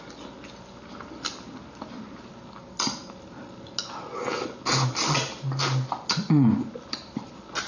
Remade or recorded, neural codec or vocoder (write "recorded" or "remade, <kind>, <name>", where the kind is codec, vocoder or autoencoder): recorded